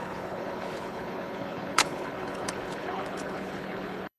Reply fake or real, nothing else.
fake